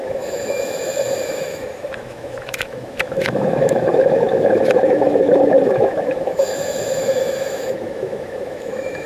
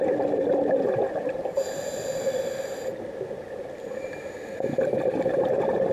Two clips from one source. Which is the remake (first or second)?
first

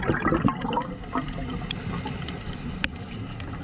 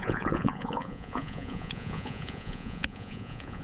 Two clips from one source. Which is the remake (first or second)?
second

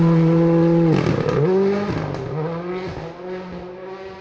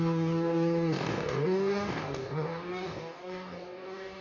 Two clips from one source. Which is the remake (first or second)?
second